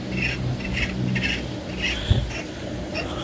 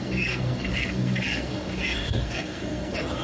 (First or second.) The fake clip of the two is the second